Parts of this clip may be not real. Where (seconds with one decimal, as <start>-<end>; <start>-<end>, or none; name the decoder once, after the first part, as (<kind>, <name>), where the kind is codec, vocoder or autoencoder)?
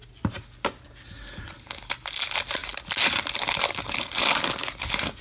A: none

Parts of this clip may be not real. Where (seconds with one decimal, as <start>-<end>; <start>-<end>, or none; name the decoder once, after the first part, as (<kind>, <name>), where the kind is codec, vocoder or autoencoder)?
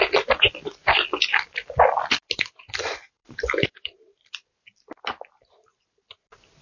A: 3.2-4.3 (vocoder, BigVGAN v2)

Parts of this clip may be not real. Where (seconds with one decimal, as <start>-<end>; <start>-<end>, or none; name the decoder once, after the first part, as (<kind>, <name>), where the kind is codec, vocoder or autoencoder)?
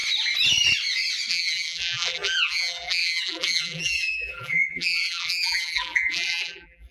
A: 1.3-6.9 (vocoder, BigVGAN v2)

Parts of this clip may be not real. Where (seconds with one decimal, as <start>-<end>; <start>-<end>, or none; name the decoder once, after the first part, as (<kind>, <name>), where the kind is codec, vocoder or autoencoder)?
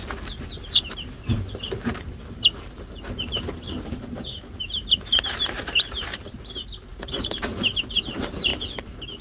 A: 0.7-8.5 (vocoder, BigVGAN v2)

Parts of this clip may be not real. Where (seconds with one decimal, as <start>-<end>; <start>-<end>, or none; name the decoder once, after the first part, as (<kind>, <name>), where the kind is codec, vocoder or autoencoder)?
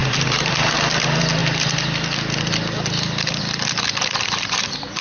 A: 0.0-1.4 (vocoder, BigVGAN v2); 3.4-5.0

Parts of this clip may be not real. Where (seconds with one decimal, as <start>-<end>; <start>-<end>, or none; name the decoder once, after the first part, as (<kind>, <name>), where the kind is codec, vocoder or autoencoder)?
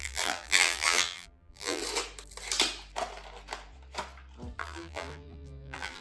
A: 0.0-1.8 (vocoder, BigVGAN v2); 4.6-6.0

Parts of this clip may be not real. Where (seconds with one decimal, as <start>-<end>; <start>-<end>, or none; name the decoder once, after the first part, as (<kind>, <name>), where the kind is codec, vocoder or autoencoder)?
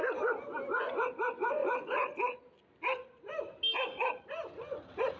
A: 1.6-3.3 (vocoder, BigVGAN v2)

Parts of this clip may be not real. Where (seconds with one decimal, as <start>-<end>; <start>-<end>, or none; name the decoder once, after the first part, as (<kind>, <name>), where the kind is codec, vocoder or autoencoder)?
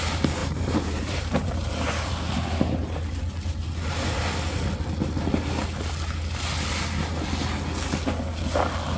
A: 0.4-2.1 (vocoder, BigVGAN v2)